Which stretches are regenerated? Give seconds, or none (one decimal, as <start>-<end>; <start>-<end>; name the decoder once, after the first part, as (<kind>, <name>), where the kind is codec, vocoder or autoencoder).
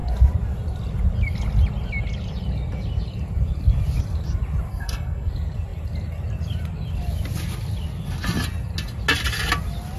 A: 4.7-5.3 (codec, SNAC)